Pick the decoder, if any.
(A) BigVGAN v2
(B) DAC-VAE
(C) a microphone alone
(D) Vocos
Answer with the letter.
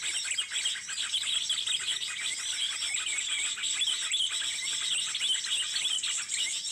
C